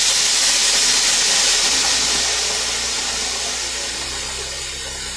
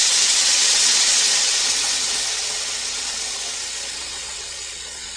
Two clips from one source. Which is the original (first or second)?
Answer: first